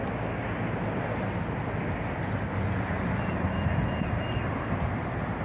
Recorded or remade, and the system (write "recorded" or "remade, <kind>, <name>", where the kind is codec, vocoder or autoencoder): recorded